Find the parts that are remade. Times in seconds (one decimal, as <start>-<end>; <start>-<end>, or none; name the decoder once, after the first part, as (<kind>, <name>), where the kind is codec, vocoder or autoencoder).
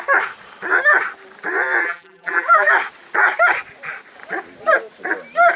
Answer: 1.8-2.7 (vocoder, BigVGAN v2)